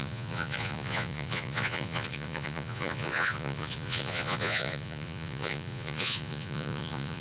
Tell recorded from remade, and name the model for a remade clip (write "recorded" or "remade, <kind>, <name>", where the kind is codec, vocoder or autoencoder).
remade, vocoder, Vocos